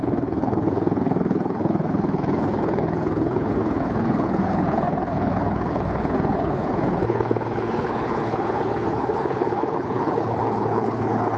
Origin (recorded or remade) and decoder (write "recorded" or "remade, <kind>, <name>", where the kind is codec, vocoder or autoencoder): remade, codec, HILCodec